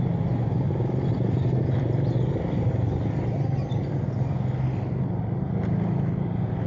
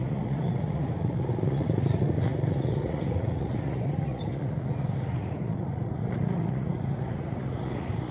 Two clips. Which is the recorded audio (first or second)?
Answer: first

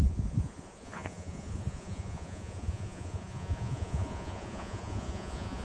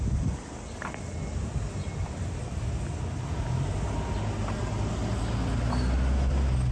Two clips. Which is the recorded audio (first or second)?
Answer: second